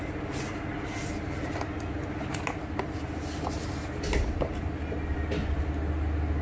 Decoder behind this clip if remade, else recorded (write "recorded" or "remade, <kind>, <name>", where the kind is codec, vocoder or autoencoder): recorded